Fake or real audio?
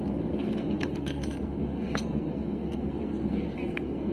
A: fake